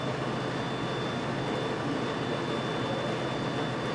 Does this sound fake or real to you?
real